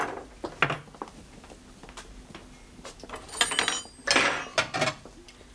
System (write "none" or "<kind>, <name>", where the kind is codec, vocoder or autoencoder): none